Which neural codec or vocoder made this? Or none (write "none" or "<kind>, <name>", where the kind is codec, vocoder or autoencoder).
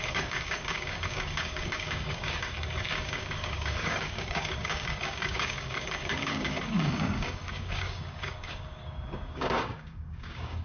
codec, DAC